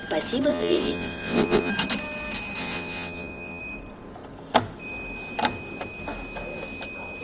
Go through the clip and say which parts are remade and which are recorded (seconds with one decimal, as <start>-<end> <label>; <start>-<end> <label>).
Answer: 0.0-0.5 recorded; 0.5-1.7 remade; 1.7-2.6 recorded; 2.6-3.6 remade; 3.6-7.2 recorded